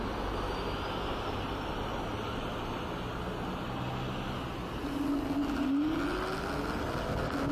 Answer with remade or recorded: recorded